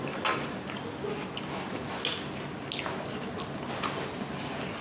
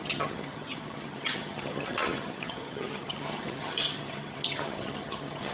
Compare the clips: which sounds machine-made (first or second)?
second